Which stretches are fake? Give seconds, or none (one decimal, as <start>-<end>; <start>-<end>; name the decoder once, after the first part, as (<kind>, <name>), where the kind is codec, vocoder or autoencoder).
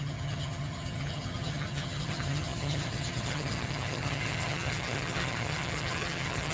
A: 0.0-6.5 (vocoder, HiFi-GAN)